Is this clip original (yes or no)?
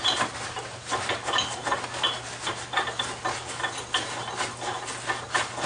yes